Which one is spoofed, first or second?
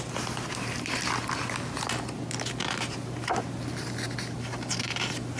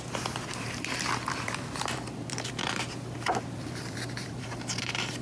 second